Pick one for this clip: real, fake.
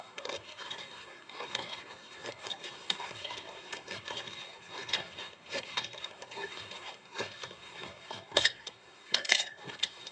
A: fake